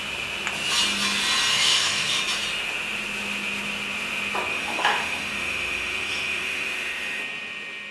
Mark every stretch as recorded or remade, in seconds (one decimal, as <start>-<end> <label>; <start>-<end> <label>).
0.0-1.5 recorded; 1.5-2.2 remade; 2.2-4.5 recorded; 4.5-7.2 remade; 7.2-7.9 recorded